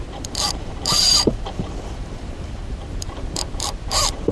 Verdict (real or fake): fake